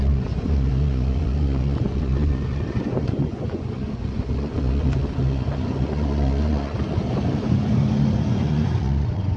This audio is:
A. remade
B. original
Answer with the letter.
A